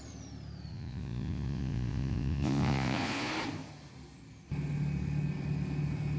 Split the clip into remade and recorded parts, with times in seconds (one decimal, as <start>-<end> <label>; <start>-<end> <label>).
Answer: 0.0-0.7 recorded; 0.7-3.3 remade; 3.3-6.2 recorded

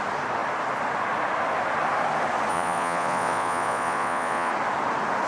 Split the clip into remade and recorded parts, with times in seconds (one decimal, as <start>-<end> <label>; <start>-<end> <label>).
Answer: 0.0-2.5 recorded; 2.5-4.5 remade; 4.5-5.3 recorded

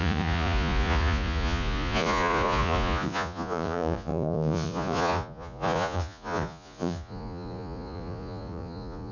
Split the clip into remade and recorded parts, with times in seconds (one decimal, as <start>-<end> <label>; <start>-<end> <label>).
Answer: 0.0-9.1 remade

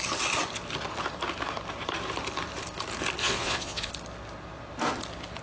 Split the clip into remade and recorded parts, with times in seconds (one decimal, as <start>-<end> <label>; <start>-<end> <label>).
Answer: 0.0-3.2 recorded; 3.2-3.9 remade; 3.9-5.4 recorded

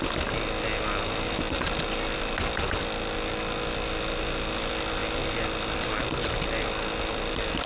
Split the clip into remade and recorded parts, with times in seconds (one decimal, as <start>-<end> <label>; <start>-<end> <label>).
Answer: 0.0-7.7 recorded

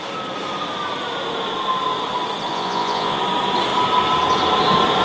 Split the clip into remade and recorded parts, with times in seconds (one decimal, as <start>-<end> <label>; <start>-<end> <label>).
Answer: 0.0-2.5 recorded; 2.5-3.2 remade; 3.2-5.0 recorded

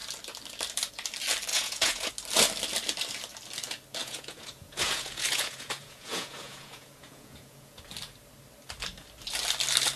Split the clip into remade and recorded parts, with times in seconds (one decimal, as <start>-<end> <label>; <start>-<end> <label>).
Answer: 0.0-1.5 recorded; 1.5-2.1 remade; 2.1-4.0 recorded; 4.0-7.8 remade; 7.8-10.0 recorded